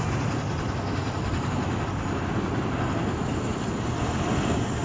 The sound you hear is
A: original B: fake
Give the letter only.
A